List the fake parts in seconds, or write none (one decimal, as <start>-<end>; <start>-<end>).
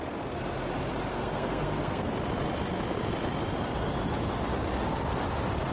1.1-2.1